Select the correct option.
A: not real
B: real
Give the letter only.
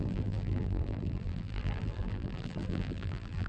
A